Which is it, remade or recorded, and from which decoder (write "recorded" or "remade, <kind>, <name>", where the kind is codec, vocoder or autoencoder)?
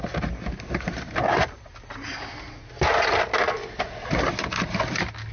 recorded